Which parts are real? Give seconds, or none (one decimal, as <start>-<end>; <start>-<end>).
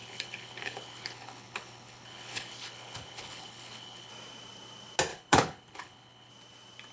4.1-5.1; 6.3-6.9